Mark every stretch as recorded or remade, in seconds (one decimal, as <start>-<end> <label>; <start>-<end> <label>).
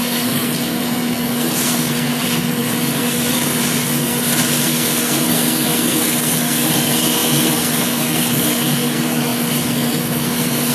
0.0-10.7 remade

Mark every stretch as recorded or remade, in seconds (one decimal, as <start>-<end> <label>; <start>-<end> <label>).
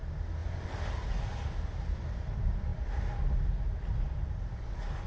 0.0-5.1 recorded